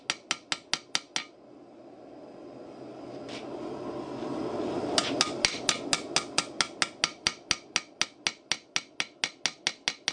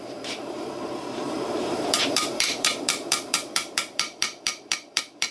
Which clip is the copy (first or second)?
second